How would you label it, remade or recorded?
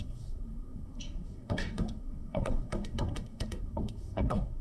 remade